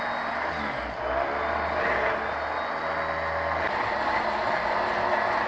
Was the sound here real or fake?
real